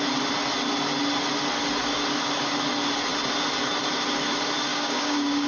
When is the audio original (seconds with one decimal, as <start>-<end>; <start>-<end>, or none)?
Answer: 0.0-4.7